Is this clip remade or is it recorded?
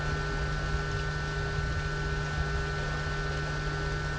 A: recorded